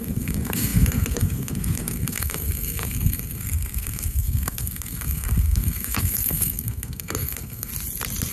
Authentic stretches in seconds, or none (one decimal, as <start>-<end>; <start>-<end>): 7.7-8.3